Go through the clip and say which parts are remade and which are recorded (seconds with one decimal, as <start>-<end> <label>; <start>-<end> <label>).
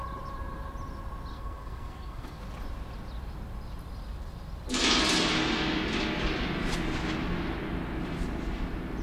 0.0-1.3 recorded; 1.3-2.4 remade; 2.4-9.0 recorded